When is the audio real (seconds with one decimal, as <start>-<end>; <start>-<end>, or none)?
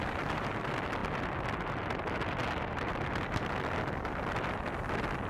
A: 0.0-5.3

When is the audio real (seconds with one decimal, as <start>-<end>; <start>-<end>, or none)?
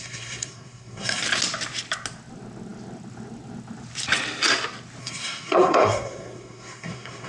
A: 1.2-5.0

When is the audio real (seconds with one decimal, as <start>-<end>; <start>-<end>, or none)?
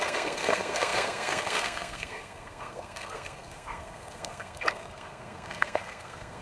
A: none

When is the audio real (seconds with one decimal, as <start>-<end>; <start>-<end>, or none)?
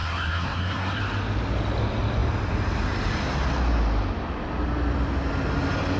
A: 1.0-6.0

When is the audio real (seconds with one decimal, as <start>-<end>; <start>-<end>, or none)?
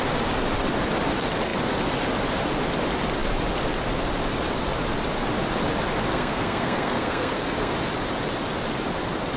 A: 0.0-6.1; 7.7-9.4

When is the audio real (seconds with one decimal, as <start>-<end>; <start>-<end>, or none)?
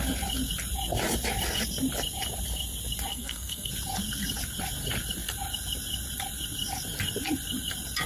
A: 0.0-3.1; 3.7-8.1